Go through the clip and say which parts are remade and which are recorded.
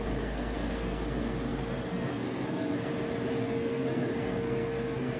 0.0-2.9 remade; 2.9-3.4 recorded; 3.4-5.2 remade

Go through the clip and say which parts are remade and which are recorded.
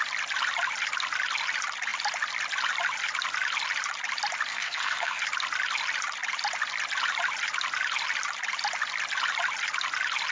0.0-4.5 recorded; 4.5-5.2 remade; 5.2-10.3 recorded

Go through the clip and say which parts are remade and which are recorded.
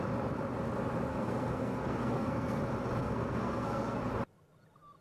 0.0-1.1 recorded; 1.1-2.6 remade; 2.6-3.0 recorded; 3.0-4.0 remade; 4.0-5.0 recorded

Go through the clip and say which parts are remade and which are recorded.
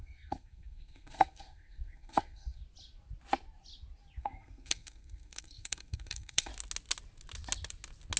0.0-2.6 remade; 2.6-4.2 recorded; 4.2-6.5 remade; 6.5-8.2 recorded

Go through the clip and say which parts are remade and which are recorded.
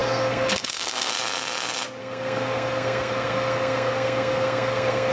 0.0-1.1 remade; 1.1-2.0 recorded; 2.0-5.1 remade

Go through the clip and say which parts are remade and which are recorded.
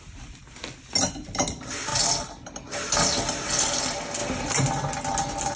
0.0-5.6 recorded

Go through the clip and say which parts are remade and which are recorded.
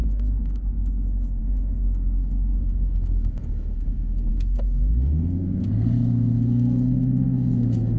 0.0-8.0 remade